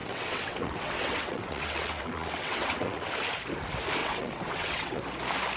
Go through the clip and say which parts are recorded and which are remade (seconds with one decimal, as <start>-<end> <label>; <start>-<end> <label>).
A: 0.0-3.1 remade; 3.1-4.0 recorded; 4.0-5.0 remade; 5.0-5.6 recorded